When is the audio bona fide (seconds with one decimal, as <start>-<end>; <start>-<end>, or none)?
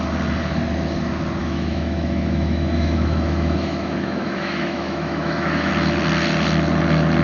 0.0-1.4; 5.7-7.2